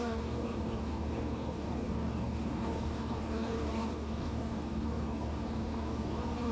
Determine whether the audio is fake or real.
fake